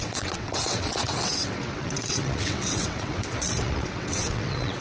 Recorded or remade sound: remade